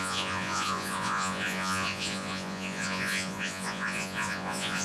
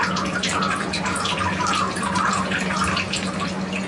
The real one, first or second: second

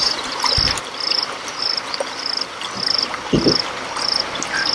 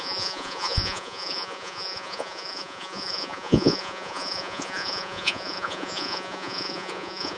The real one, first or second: first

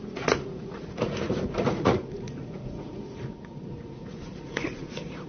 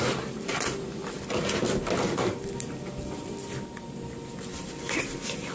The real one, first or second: second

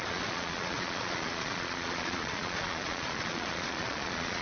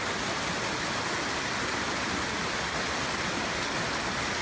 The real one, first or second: second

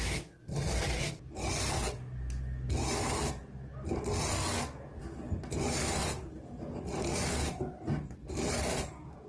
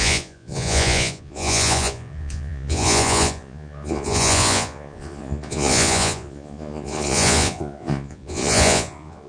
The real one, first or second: first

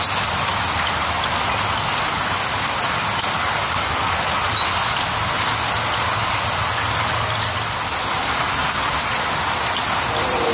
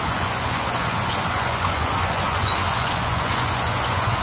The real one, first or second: first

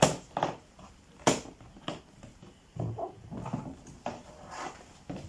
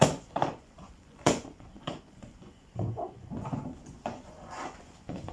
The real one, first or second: first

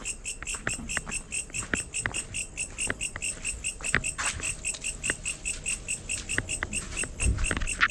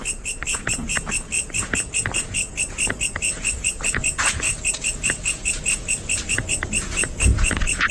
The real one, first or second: first